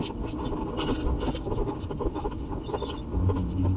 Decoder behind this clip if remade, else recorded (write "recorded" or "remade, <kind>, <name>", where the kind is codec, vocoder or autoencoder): recorded